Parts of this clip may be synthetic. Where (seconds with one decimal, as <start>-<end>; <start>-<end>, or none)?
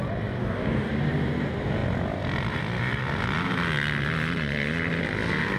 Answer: 0.4-0.9